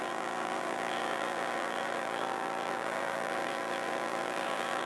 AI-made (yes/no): yes